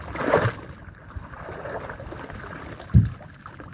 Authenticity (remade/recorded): recorded